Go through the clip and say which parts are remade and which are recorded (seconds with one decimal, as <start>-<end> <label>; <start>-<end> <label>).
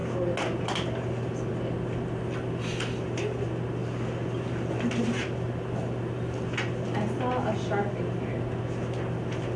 0.0-9.6 recorded